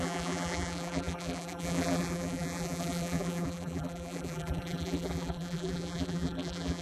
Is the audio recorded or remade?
remade